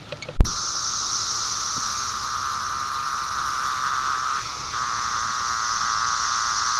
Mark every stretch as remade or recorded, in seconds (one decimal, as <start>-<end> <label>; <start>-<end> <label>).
0.0-6.8 recorded